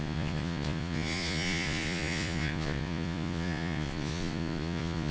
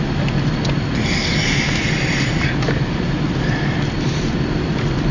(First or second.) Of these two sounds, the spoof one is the first